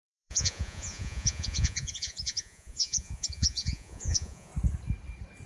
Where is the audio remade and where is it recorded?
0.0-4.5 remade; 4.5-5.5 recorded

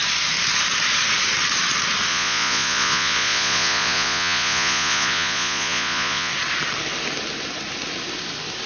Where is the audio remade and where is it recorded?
0.0-2.1 recorded; 2.1-6.3 remade; 6.3-8.7 recorded

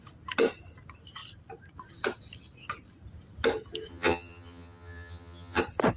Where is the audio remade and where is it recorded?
0.0-3.9 recorded; 3.9-5.6 remade; 5.6-6.0 recorded